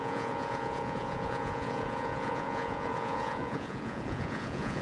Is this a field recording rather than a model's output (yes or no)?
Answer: no